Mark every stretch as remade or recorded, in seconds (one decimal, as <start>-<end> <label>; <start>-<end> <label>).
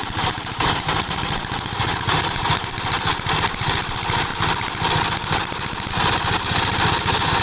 0.0-4.3 remade; 4.3-5.9 recorded; 5.9-7.4 remade